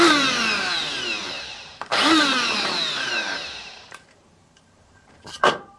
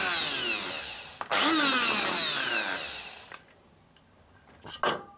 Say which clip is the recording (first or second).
second